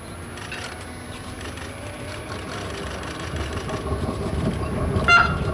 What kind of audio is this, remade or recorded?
recorded